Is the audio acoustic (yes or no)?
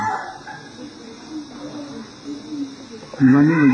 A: yes